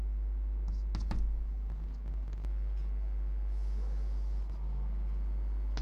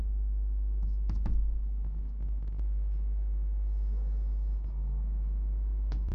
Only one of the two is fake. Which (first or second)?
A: second